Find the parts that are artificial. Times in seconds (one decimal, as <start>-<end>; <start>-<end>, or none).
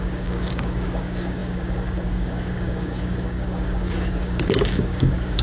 0.0-5.4